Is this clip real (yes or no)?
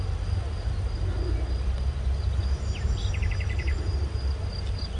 yes